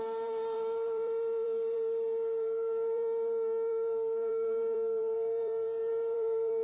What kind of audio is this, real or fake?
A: fake